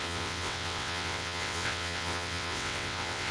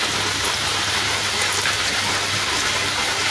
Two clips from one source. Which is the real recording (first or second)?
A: second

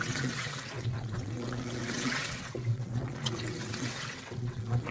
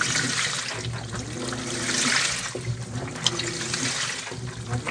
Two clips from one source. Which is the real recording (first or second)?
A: second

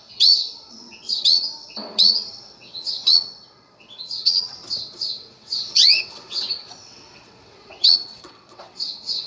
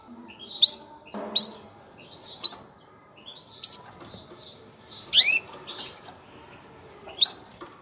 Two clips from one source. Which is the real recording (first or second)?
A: second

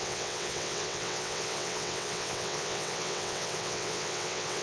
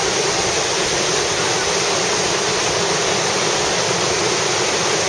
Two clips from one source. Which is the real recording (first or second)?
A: second